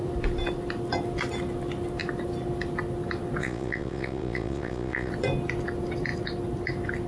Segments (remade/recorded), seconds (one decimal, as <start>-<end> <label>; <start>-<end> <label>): 0.0-3.4 recorded; 3.4-5.1 remade; 5.1-7.1 recorded